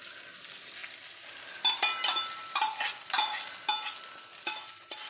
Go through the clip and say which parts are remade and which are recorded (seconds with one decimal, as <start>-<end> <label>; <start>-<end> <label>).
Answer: 0.0-5.1 recorded